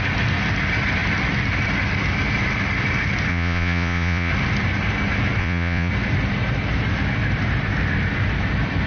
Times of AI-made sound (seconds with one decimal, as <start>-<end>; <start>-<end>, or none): 3.3-4.3; 5.4-5.9